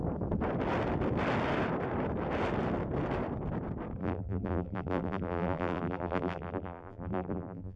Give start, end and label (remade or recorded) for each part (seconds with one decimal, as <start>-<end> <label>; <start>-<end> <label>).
0.0-4.0 recorded; 4.0-7.8 remade